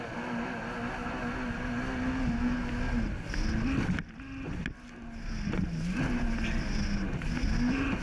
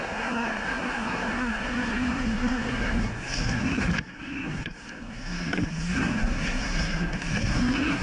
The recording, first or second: first